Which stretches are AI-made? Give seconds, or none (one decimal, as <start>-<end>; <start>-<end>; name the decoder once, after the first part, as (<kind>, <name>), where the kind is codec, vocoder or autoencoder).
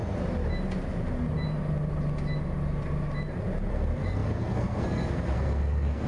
3.7-6.1 (codec, SNAC)